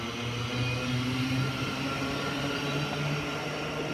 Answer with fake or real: real